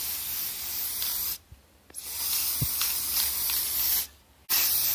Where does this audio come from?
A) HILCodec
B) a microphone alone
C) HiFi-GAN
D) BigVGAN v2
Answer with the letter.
B